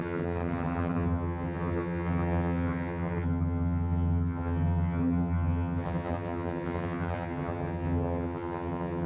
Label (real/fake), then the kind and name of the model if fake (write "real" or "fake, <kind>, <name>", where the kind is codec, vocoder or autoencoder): fake, vocoder, HiFi-GAN